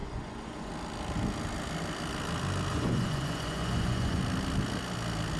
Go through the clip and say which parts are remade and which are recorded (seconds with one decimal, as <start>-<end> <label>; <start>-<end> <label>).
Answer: 0.0-0.7 remade; 0.7-2.7 recorded; 2.7-4.2 remade; 4.2-5.4 recorded